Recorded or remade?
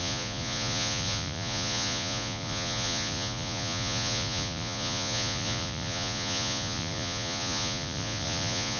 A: remade